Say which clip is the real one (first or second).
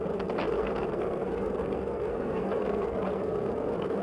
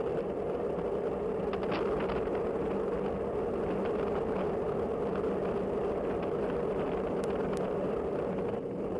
second